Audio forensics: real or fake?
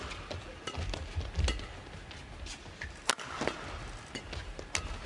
real